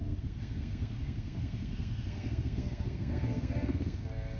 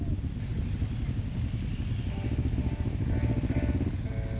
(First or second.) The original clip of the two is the second